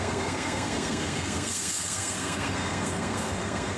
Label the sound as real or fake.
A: fake